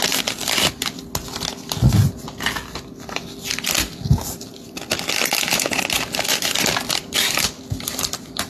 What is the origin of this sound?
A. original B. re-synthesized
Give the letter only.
A